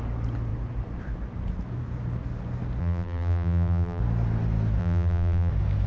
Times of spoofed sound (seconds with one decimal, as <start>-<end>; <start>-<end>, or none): 2.8-4.0; 4.8-5.5